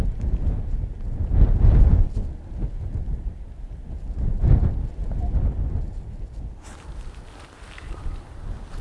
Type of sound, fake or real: real